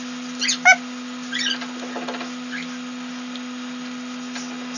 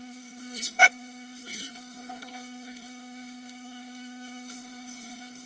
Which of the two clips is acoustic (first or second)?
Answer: first